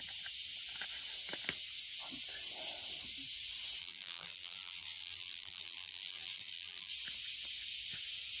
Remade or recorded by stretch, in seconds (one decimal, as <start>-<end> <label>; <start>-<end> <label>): 0.0-3.8 recorded; 3.8-6.9 remade; 6.9-8.4 recorded